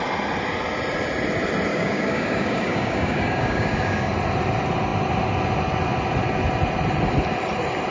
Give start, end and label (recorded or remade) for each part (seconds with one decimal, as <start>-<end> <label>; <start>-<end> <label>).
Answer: 0.0-1.7 recorded; 1.7-4.1 remade; 4.1-7.9 recorded